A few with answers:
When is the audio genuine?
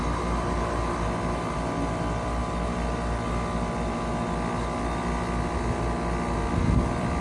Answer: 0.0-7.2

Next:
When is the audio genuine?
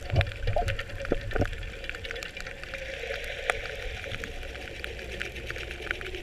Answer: 0.0-6.2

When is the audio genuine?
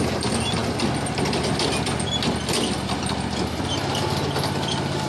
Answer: 0.0-5.1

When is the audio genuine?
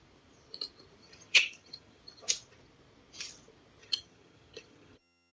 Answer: 0.0-1.0; 2.0-3.8